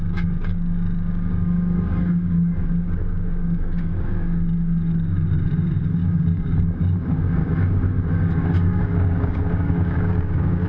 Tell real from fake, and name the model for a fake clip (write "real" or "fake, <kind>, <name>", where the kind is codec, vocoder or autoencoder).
fake, codec, DAC